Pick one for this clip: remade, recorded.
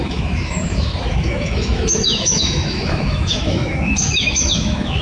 remade